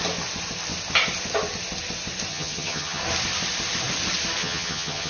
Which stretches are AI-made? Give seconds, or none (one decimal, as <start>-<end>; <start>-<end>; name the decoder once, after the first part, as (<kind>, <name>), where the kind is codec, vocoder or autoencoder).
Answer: 2.3-3.0 (vocoder, HiFi-GAN); 4.4-5.1